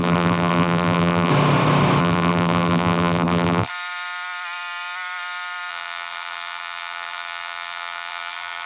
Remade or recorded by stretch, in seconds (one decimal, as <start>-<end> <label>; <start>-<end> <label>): 0.0-1.3 remade; 1.3-2.0 recorded; 2.0-3.7 remade; 3.7-5.7 recorded; 5.7-8.7 remade